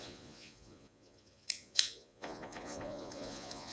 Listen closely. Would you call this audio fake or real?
fake